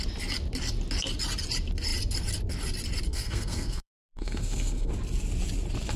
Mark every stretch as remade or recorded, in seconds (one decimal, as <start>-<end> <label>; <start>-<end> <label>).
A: 0.0-3.1 recorded; 3.1-4.9 remade; 4.9-6.0 recorded